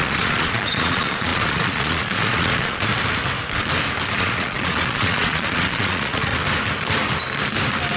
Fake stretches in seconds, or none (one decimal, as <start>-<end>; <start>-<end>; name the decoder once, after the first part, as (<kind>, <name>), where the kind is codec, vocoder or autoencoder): 0.0-2.9 (vocoder, Vocos); 4.2-6.3